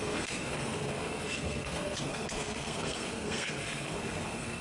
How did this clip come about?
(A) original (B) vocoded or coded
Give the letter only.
B